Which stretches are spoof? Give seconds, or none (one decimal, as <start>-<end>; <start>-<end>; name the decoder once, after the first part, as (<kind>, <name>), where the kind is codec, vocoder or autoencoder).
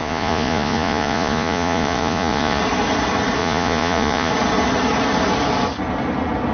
0.0-2.6 (vocoder, Vocos); 3.4-4.3